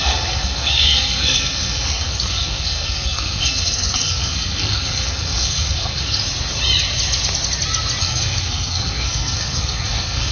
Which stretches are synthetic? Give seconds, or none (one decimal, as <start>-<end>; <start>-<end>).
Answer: 0.0-6.2; 8.0-10.3